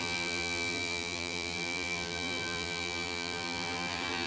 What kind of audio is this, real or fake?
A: fake